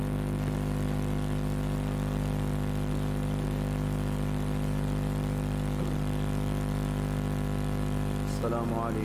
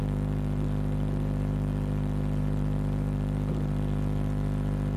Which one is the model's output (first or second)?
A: second